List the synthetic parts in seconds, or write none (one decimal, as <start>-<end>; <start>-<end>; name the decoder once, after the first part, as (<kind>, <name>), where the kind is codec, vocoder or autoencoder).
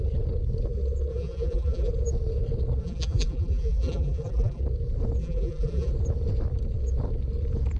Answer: 1.1-1.9 (vocoder, BigVGAN v2); 2.8-4.6; 5.2-5.9